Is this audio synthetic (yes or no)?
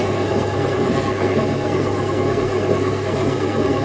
yes